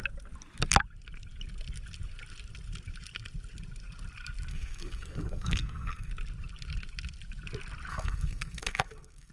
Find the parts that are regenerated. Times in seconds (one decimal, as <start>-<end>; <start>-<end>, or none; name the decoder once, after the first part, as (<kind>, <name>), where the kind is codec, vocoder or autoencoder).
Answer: 4.5-6.1 (codec, SNAC); 7.9-9.3